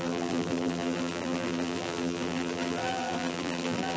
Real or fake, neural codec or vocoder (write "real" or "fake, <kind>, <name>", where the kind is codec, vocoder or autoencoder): fake, vocoder, BigVGAN v2